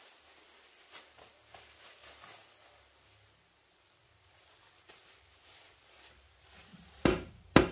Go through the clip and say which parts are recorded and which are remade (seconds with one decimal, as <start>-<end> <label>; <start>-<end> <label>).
0.0-6.7 recorded; 6.7-7.3 remade; 7.3-7.7 recorded